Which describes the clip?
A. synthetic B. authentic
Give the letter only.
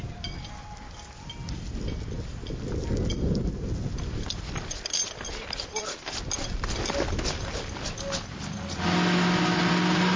B